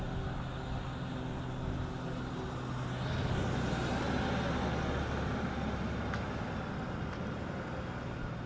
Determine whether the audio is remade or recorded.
recorded